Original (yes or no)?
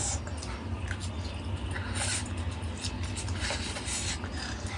yes